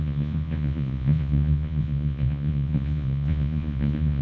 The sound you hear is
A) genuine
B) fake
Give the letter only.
B